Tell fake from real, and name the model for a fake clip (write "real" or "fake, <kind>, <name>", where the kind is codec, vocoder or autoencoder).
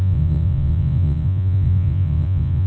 fake, vocoder, Vocos